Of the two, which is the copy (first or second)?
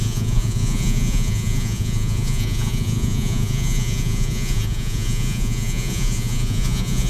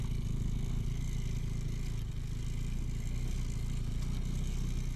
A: first